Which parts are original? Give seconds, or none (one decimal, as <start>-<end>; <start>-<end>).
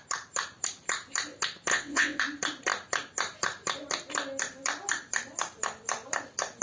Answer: 0.0-1.7; 2.2-6.6